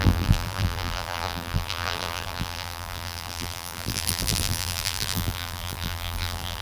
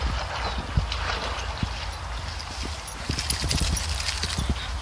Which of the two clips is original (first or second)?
second